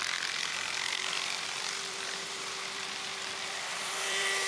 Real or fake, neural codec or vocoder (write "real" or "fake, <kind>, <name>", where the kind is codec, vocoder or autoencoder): fake, vocoder, BigVGAN v2